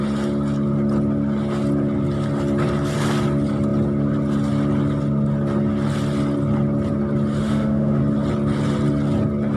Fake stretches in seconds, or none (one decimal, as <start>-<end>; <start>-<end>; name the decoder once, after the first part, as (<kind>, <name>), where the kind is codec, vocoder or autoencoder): 7.4-8.0 (autoencoder, DAC-VAE)